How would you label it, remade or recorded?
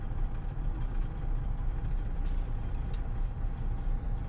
remade